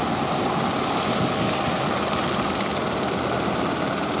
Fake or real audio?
real